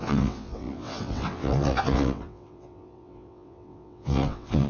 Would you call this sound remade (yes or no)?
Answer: yes